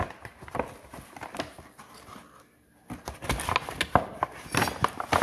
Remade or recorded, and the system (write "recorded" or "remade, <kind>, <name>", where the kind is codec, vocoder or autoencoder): recorded